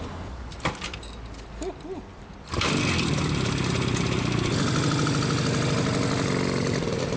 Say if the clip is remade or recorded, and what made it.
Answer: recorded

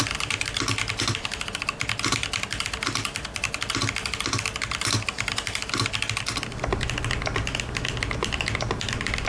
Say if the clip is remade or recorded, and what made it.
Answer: recorded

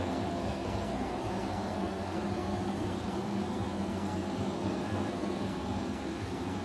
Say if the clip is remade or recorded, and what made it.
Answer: remade, codec, SNAC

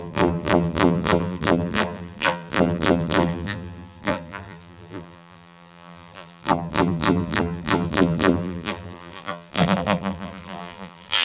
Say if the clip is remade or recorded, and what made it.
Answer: remade, vocoder, BigVGAN v2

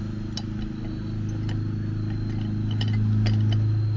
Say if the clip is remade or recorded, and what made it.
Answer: recorded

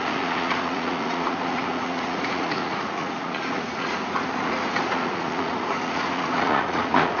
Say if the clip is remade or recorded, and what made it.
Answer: remade, vocoder, Vocos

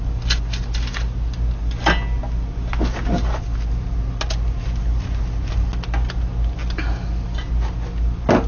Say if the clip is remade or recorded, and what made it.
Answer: recorded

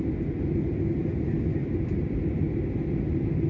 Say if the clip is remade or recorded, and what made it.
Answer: recorded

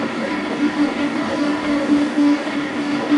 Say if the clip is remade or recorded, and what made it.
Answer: remade, codec, DAC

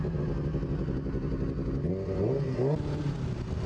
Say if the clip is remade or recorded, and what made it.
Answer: recorded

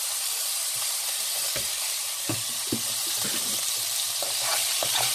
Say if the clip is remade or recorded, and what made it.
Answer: remade, vocoder, BigVGAN v2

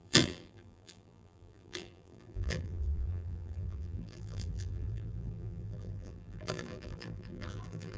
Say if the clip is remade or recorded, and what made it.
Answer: remade, vocoder, BigVGAN v2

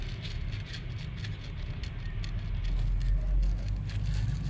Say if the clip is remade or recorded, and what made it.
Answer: recorded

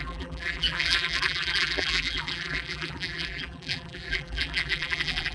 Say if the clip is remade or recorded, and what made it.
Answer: remade, vocoder, BigVGAN v2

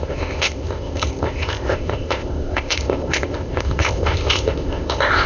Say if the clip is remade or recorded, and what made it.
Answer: remade, codec, ZipCodec